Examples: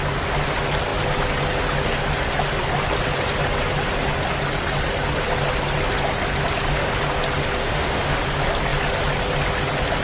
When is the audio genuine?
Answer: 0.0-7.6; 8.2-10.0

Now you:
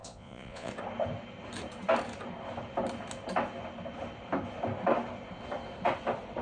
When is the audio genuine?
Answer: 0.7-6.4

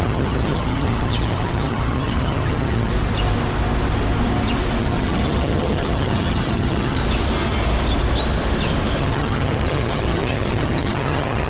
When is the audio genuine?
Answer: 2.9-4.8; 7.0-9.0